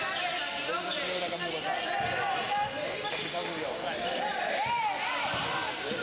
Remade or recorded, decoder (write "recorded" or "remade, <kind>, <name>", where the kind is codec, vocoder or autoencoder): recorded